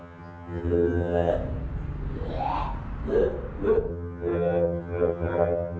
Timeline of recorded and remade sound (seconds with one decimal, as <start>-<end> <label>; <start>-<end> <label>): 0.0-1.3 remade; 1.3-3.9 recorded; 3.9-5.8 remade

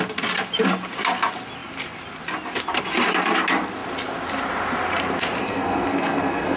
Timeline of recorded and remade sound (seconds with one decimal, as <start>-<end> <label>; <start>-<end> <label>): 0.0-5.4 recorded; 5.4-6.6 remade

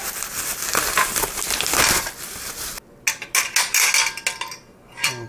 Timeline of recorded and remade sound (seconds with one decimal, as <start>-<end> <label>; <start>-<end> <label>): 0.0-5.3 recorded

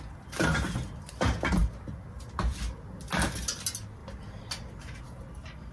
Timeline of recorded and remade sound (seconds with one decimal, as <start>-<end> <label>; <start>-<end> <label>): 0.0-5.7 recorded

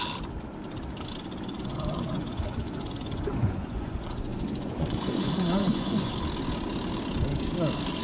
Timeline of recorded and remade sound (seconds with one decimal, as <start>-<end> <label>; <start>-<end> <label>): 0.0-1.7 recorded; 1.7-6.1 remade; 6.1-8.0 recorded

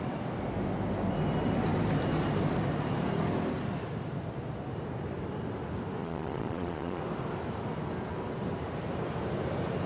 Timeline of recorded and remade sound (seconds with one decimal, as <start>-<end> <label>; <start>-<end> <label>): 0.0-6.0 recorded; 6.0-7.0 remade; 7.0-9.9 recorded

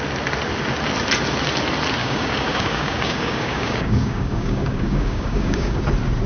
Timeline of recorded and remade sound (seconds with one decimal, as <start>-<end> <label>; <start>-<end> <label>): 0.0-2.0 recorded; 2.0-5.8 remade; 5.8-6.3 recorded

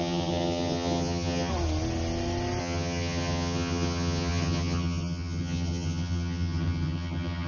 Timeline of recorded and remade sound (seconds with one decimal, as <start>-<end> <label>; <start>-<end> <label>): 0.0-1.5 remade; 1.5-2.6 recorded; 2.6-7.5 remade